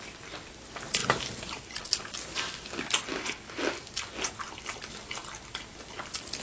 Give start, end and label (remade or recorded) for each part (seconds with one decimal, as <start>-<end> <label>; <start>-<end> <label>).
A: 0.0-6.4 recorded